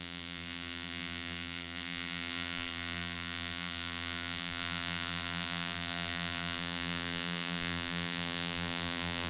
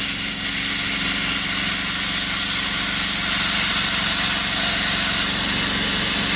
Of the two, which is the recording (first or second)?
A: second